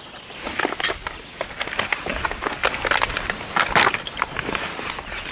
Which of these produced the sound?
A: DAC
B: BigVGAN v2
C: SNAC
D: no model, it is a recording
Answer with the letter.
D